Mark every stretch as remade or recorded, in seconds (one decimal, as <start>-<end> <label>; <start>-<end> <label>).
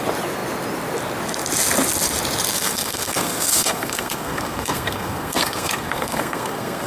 0.0-2.5 recorded; 2.5-6.9 remade